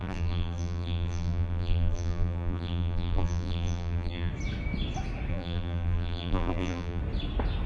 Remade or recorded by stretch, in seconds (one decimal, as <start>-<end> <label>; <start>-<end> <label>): 0.0-4.3 remade; 4.3-5.3 recorded; 5.3-7.0 remade; 7.0-7.7 recorded